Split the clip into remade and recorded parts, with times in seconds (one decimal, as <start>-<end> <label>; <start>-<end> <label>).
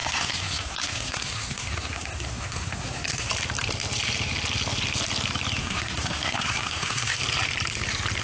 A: 0.0-3.3 remade; 3.3-5.6 recorded; 5.6-7.2 remade; 7.2-8.2 recorded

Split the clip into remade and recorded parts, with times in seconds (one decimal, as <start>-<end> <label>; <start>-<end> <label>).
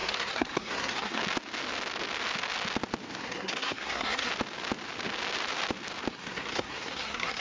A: 0.0-1.2 remade; 1.2-3.2 recorded; 3.2-4.3 remade; 4.3-6.1 recorded; 6.1-7.4 remade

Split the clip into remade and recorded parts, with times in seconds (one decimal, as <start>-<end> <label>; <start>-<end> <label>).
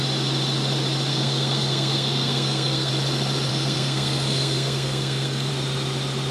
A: 0.0-1.1 recorded; 1.1-2.9 remade; 2.9-3.5 recorded; 3.5-5.5 remade; 5.5-6.3 recorded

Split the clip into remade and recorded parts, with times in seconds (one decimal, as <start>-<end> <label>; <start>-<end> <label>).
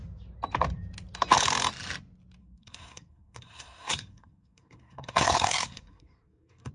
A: 0.0-2.4 recorded; 2.4-6.7 remade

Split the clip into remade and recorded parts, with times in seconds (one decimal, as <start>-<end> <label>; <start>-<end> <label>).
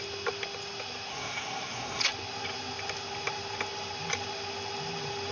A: 0.0-1.1 recorded; 1.1-2.0 remade; 2.0-5.3 recorded